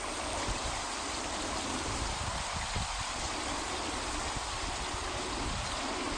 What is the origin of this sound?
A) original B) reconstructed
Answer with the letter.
A